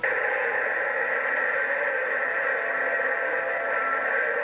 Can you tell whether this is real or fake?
real